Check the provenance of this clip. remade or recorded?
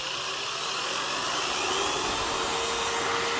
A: recorded